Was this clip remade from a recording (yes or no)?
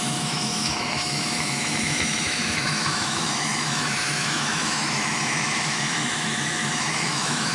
yes